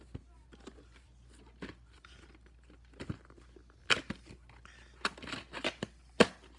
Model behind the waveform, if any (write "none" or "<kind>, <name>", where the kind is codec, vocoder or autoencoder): none